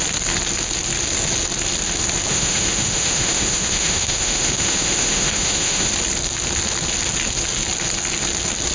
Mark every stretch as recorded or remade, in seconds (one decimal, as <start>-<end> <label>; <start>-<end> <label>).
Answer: 0.0-2.3 recorded; 2.3-5.9 remade; 5.9-8.7 recorded